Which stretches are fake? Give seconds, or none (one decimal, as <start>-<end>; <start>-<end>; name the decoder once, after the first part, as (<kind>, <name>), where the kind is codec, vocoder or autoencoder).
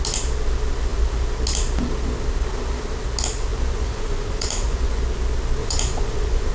3.5-5.0 (vocoder, Vocos); 5.6-6.5